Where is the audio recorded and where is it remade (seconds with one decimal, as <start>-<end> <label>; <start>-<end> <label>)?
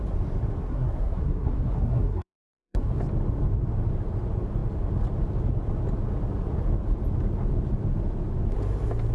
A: 0.0-0.6 recorded; 0.6-3.0 remade; 3.0-9.1 recorded